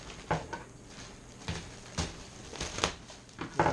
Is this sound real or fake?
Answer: real